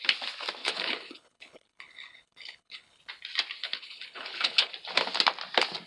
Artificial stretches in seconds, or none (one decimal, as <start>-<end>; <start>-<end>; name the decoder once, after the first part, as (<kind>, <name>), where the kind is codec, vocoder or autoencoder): 0.6-3.0 (codec, HILCodec); 3.6-4.7